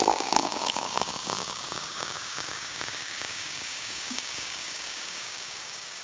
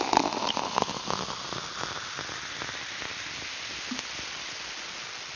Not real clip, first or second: first